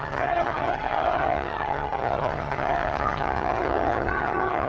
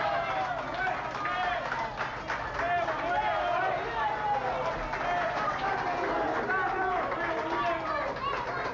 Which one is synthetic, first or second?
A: first